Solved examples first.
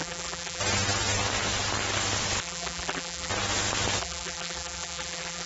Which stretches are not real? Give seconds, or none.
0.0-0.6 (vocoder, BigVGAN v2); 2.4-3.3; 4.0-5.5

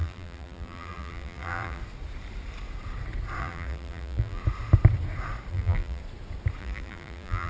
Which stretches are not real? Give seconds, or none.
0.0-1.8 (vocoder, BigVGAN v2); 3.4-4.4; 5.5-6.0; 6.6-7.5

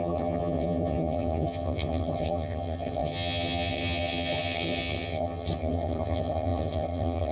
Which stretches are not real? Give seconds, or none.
0.0-7.3 (vocoder, HiFi-GAN)